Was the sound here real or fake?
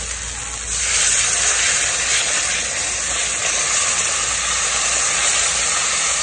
real